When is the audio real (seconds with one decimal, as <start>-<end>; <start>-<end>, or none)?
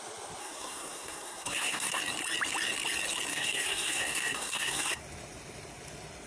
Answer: 0.0-0.4; 2.0-3.3; 5.0-6.3